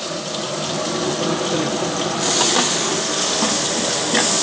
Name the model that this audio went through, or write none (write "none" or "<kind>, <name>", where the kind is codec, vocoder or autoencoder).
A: none